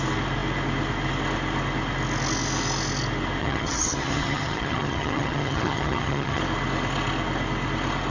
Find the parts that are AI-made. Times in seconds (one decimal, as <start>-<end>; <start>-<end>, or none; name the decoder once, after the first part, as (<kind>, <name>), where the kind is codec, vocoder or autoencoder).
3.4-6.4 (vocoder, HiFi-GAN)